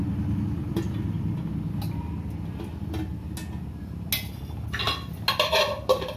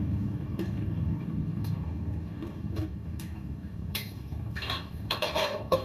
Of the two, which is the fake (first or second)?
second